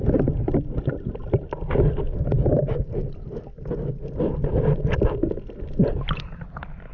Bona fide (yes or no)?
no